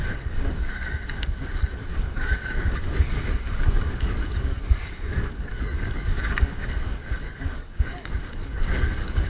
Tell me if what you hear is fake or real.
fake